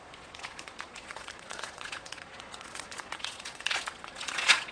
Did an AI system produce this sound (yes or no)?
yes